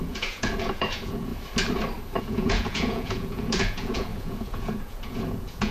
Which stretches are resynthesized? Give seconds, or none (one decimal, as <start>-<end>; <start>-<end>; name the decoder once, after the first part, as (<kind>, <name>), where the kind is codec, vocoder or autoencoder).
0.0-1.3 (vocoder, Vocos); 2.2-5.7